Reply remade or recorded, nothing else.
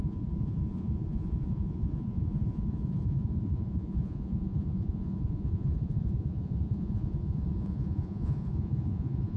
remade